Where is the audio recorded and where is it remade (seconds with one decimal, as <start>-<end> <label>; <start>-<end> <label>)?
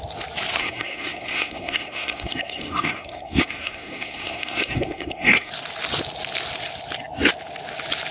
0.0-0.6 recorded; 0.6-5.5 remade; 5.5-8.1 recorded